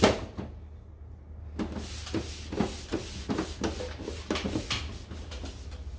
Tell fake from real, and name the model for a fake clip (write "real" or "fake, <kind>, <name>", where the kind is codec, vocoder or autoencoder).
real